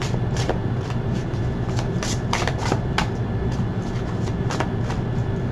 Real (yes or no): yes